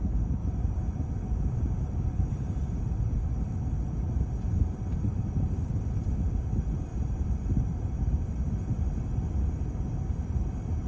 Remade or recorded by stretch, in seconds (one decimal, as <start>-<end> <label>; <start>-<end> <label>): 0.0-10.9 recorded